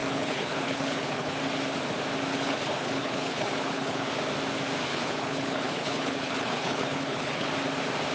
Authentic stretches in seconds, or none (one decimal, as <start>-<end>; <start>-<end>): 1.4-2.3; 4.1-4.9; 7.5-8.1